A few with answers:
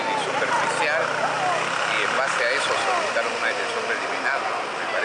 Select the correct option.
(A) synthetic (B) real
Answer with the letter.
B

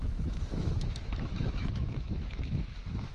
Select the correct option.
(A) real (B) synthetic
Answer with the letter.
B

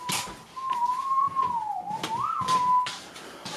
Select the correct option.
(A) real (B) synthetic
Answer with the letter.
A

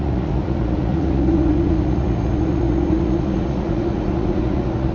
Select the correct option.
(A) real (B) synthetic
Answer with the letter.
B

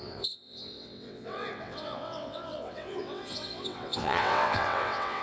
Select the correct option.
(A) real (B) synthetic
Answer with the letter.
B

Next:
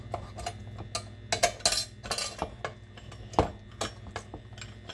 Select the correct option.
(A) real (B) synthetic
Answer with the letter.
A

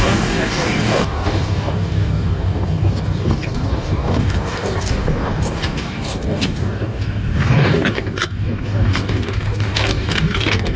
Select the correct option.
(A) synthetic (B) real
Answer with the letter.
A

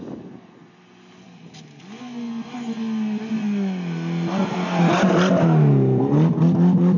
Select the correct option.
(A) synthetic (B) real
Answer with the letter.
B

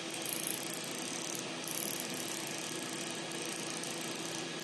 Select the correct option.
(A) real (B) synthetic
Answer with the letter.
A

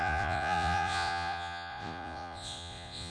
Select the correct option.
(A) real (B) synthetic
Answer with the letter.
B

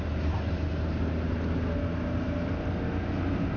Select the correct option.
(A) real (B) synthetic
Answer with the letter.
A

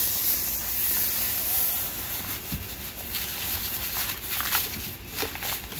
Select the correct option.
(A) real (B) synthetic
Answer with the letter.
A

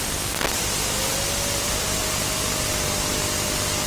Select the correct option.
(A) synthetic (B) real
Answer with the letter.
B